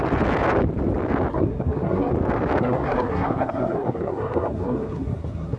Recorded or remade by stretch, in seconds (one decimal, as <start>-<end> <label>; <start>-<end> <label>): 0.0-1.3 recorded; 1.3-2.1 remade; 2.1-2.6 recorded; 2.6-5.6 remade